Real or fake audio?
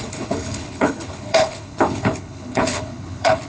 fake